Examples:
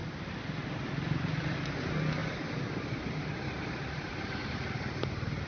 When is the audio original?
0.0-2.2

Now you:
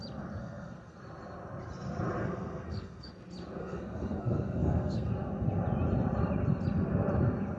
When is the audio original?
0.0-0.4; 1.0-2.2; 3.1-3.6; 5.1-7.6

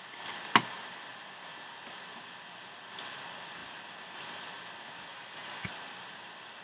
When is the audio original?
0.0-5.1; 5.7-6.6